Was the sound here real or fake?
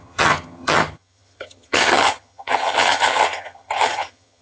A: fake